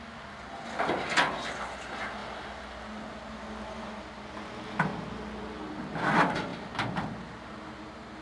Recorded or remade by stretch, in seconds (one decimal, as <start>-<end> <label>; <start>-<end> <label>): 0.0-8.2 recorded